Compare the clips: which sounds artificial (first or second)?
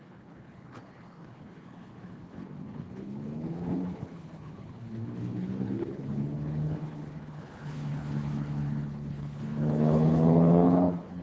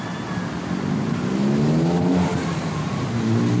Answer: first